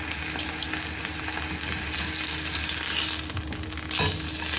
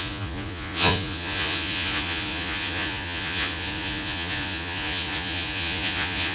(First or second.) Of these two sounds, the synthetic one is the second